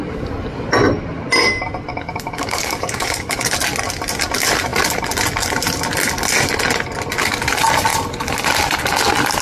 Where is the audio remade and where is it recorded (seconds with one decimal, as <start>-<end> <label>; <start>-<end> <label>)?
0.0-1.9 recorded; 1.9-3.5 remade; 3.5-9.4 recorded